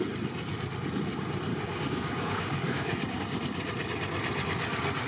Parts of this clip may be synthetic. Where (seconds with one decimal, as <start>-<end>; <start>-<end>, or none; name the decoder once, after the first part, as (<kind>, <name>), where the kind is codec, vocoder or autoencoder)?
1.5-3.2 (codec, DAC)

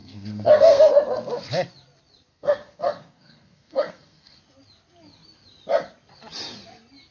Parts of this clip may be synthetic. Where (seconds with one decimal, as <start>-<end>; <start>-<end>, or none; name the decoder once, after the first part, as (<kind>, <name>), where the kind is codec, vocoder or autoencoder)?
0.0-0.9 (codec, SNAC); 2.3-4.4